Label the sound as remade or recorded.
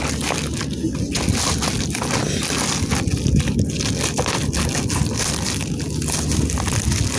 recorded